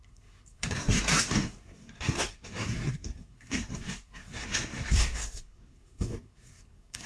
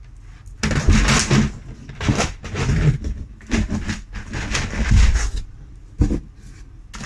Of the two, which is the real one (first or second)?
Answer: second